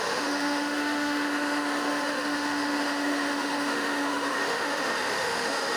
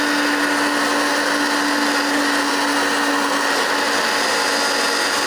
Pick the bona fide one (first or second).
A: second